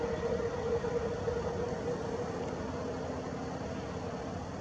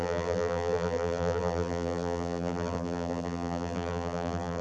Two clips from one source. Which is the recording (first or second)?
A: first